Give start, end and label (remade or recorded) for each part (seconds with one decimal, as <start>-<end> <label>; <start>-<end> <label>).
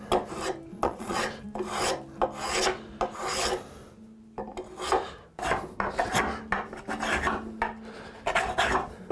0.0-0.7 recorded; 0.7-1.2 remade; 1.2-9.1 recorded